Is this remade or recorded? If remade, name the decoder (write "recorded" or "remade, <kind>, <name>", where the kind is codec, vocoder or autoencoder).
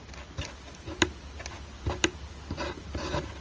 recorded